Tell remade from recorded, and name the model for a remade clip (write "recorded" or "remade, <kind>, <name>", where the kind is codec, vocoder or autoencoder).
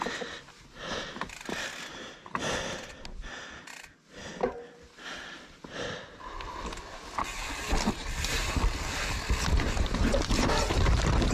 recorded